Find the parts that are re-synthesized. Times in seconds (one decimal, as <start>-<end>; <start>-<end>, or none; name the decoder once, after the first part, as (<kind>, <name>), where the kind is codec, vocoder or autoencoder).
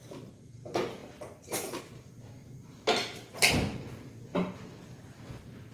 1.0-1.8 (vocoder, BigVGAN v2); 4.3-4.8